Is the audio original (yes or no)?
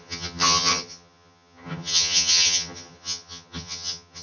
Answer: no